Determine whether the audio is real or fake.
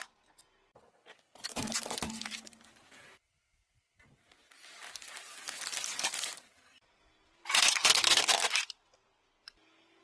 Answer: real